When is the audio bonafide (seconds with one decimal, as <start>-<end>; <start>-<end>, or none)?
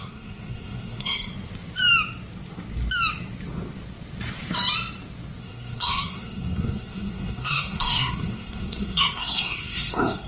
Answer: 1.3-5.4